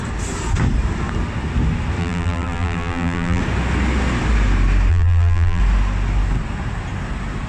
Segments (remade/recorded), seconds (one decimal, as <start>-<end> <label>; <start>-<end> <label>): 0.0-2.0 recorded; 2.0-3.4 remade; 3.4-4.9 recorded; 4.9-5.6 remade; 5.6-7.5 recorded